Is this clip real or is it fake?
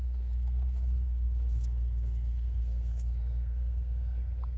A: fake